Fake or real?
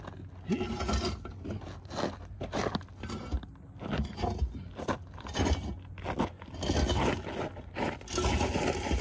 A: real